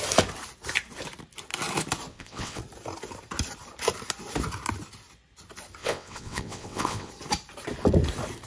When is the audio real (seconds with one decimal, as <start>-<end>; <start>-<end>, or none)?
0.0-2.1; 2.6-5.8; 7.1-8.5